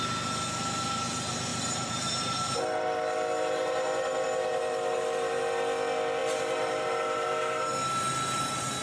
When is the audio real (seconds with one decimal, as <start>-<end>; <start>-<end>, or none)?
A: 0.0-1.5; 5.4-6.2; 7.6-8.8